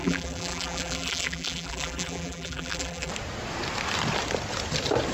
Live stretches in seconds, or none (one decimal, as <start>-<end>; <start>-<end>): 3.1-5.1

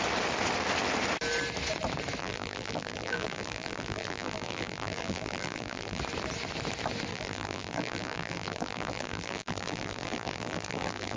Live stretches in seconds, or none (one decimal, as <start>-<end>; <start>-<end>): 0.0-2.2; 6.0-7.1

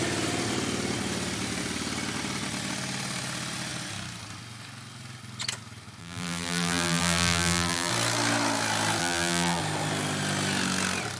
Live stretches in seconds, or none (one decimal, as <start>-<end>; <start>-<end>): 0.0-6.0; 7.9-9.0; 9.6-11.2

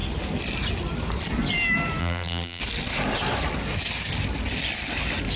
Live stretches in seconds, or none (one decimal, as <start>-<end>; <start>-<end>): 0.0-2.0; 2.6-5.4